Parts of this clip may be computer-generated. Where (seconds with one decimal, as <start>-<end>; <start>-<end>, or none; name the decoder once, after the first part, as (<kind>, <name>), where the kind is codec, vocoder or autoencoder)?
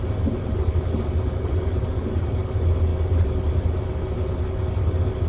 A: none